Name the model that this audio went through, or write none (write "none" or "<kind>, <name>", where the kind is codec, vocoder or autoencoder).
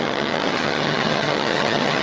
vocoder, HiFi-GAN